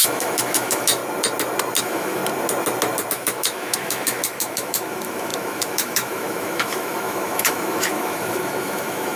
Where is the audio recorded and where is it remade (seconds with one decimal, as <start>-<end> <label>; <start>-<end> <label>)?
0.0-1.0 remade; 1.0-1.8 recorded; 1.8-2.2 remade; 2.2-3.1 recorded; 3.1-9.2 remade